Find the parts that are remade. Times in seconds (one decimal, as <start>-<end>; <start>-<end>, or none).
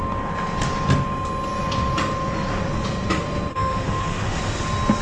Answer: 3.5-4.4